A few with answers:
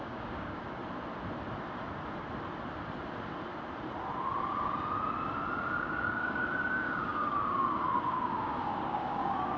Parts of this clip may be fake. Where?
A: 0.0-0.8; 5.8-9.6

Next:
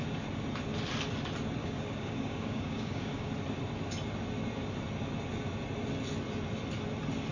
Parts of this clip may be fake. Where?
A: 1.6-3.3

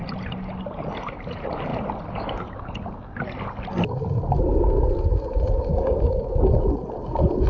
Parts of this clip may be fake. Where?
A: 5.7-6.5

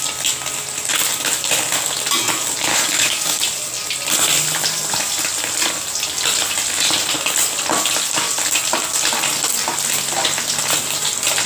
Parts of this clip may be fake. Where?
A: 2.7-3.4